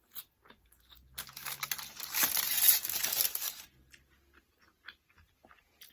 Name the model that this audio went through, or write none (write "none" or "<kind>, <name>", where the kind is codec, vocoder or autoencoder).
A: none